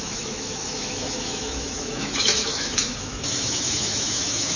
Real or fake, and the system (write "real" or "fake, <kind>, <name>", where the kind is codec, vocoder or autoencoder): fake, autoencoder, DAC-VAE